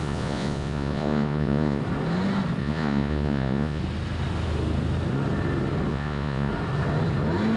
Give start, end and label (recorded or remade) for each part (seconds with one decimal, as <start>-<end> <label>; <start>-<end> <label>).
0.0-1.8 remade; 1.8-2.6 recorded; 2.6-3.8 remade; 3.8-5.9 recorded; 5.9-6.5 remade; 6.5-7.6 recorded